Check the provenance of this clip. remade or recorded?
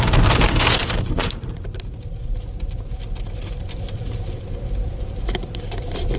remade